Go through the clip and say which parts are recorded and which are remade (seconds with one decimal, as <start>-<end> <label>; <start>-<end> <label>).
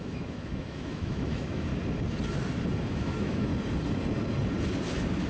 0.0-1.7 remade; 1.7-2.8 recorded; 2.8-3.5 remade; 3.5-5.3 recorded